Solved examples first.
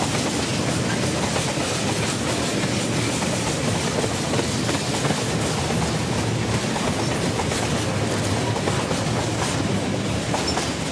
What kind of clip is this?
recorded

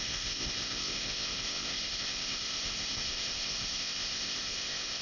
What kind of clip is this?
remade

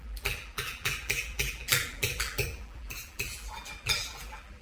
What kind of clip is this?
remade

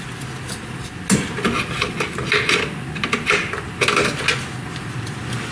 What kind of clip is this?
recorded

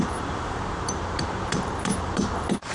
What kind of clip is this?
remade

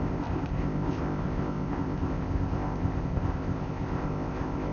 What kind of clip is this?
remade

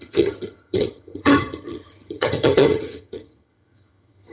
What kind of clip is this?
remade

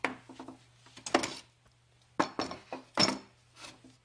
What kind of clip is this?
recorded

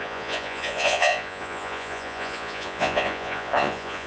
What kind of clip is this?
remade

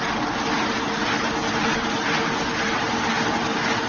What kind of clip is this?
recorded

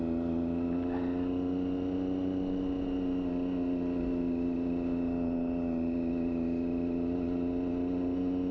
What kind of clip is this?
recorded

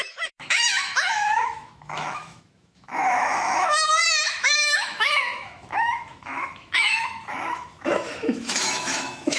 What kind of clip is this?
remade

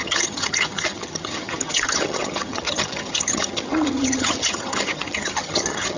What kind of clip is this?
remade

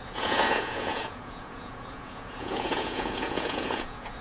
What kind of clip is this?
remade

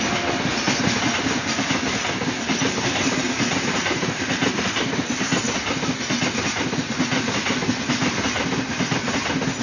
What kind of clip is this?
recorded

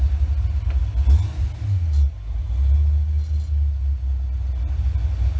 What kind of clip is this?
recorded